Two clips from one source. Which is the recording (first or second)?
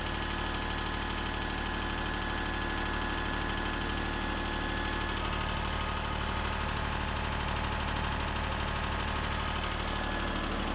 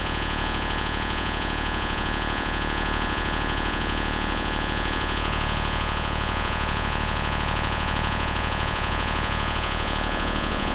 first